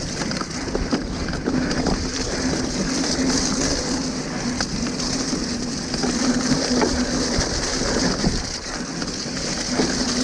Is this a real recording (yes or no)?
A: yes